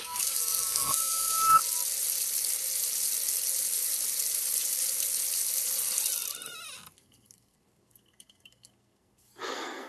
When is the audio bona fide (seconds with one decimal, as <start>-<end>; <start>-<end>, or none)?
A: 1.6-6.9